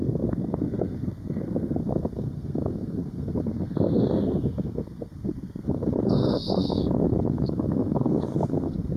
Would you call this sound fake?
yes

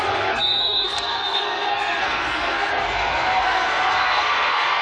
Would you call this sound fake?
yes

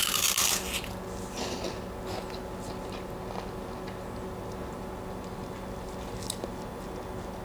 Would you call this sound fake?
no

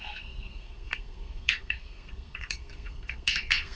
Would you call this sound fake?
yes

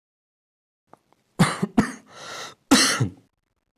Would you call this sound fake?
no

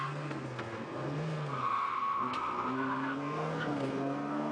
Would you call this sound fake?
yes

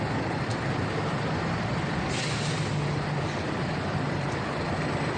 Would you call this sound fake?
no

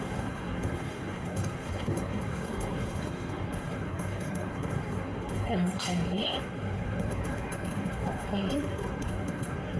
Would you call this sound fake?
yes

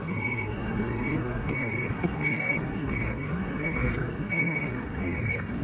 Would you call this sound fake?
yes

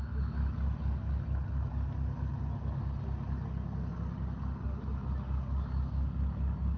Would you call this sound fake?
no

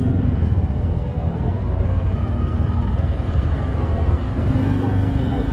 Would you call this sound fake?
yes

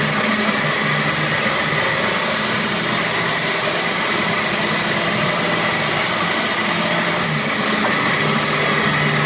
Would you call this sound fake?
no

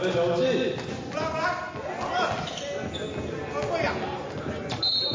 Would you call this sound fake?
no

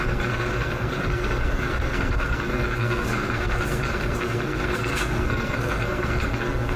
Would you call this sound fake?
yes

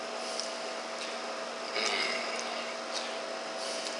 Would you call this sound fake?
no